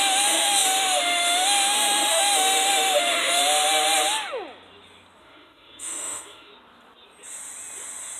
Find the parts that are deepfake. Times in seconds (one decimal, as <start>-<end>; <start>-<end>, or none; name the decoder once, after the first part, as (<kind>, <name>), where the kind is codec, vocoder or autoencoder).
0.0-3.4 (autoencoder, DAC-VAE); 5.2-6.5

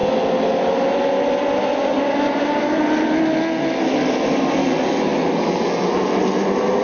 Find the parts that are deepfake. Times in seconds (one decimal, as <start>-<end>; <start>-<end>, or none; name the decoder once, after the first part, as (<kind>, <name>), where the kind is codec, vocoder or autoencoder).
none

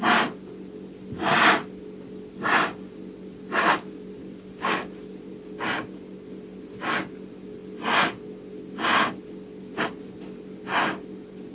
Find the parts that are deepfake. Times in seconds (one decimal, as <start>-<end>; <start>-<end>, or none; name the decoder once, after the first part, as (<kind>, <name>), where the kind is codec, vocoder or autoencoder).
none